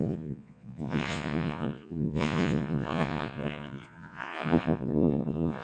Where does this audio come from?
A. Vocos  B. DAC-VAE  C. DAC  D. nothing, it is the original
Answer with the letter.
A